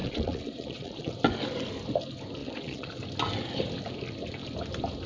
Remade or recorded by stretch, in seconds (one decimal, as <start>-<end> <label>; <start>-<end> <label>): 0.0-1.1 remade; 1.1-2.4 recorded; 2.4-3.0 remade; 3.0-5.1 recorded